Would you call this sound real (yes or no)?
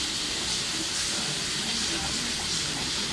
no